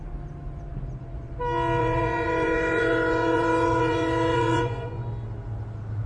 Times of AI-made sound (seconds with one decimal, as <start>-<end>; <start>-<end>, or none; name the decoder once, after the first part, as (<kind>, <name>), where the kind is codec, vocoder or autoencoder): 1.8-5.1 (vocoder, Vocos)